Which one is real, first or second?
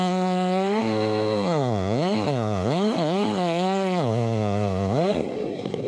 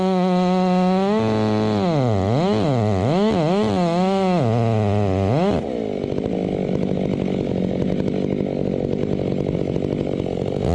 second